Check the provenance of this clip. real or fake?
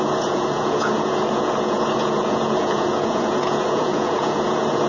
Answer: fake